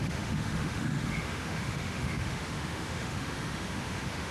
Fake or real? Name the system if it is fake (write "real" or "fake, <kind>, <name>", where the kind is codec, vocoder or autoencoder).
fake, autoencoder, DAC-VAE